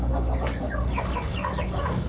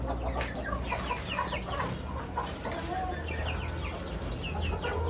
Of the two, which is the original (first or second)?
second